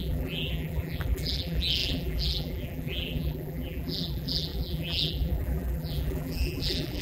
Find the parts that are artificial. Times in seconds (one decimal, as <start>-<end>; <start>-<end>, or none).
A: 0.0-7.0